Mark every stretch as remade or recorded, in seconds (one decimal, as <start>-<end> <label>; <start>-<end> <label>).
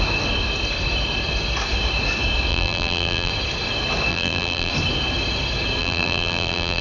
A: 0.0-2.5 recorded; 2.5-3.3 remade; 3.3-4.1 recorded; 4.1-4.7 remade; 4.7-5.8 recorded; 5.8-6.8 remade